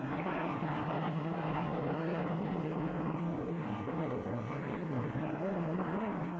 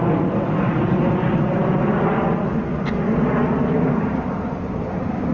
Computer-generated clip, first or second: first